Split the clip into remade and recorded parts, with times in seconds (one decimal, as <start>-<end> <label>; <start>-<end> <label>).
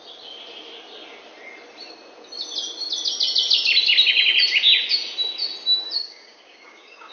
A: 0.0-6.0 recorded; 6.0-7.1 remade